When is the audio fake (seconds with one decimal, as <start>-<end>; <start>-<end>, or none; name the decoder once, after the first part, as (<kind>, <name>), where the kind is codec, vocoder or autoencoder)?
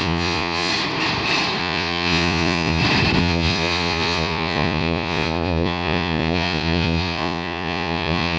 0.0-0.7 (vocoder, Vocos); 1.6-2.8; 3.2-8.4